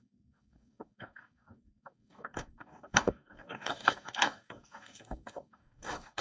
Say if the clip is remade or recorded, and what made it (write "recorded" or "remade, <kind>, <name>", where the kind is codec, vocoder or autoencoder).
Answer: remade, codec, DAC